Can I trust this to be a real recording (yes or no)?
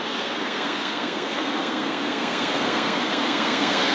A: no